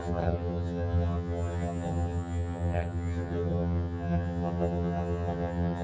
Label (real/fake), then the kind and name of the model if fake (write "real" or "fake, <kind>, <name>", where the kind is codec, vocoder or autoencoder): fake, vocoder, HiFi-GAN